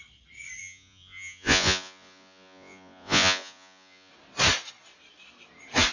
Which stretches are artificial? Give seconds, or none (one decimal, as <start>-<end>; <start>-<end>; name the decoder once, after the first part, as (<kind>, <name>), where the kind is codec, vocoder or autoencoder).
0.6-4.1 (vocoder, Vocos)